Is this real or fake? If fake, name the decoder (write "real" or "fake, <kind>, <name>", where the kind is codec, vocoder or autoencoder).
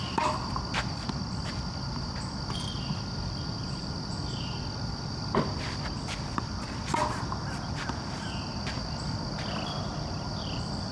fake, vocoder, BigVGAN v2